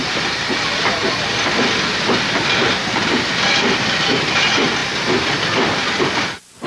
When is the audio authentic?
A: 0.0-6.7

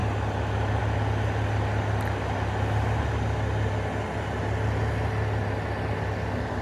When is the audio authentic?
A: 0.0-6.6

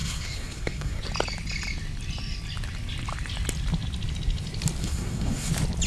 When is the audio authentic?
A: 1.0-4.8; 5.5-5.9

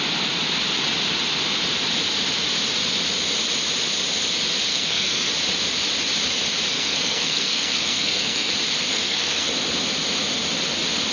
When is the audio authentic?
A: 0.0-4.7; 5.3-6.7; 8.5-8.9; 9.5-11.1

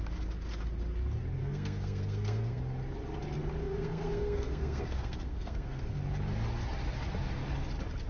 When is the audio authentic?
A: 0.0-1.4; 2.6-3.6; 5.9-8.1

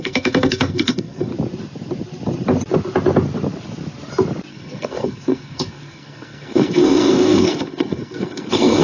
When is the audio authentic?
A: 1.3-4.5

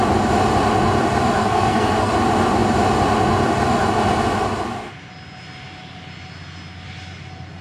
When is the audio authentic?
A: 0.0-1.4; 2.1-7.6